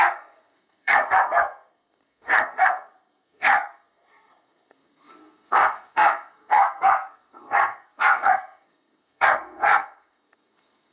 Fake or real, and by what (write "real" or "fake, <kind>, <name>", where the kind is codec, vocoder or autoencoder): fake, codec, SNAC